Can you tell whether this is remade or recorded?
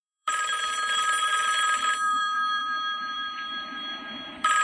remade